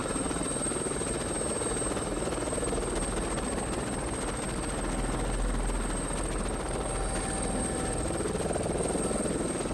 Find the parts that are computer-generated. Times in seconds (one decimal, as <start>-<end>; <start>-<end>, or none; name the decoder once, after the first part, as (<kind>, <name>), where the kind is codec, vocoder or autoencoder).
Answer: 0.0-1.1 (vocoder, BigVGAN v2)